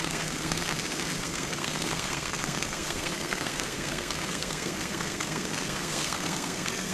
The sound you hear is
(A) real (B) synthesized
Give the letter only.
B